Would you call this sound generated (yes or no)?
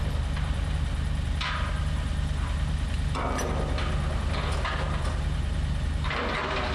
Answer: no